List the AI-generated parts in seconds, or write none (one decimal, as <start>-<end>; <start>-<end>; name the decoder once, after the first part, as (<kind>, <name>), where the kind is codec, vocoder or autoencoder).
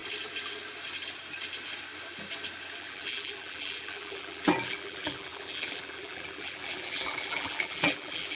2.8-8.4 (vocoder, BigVGAN v2)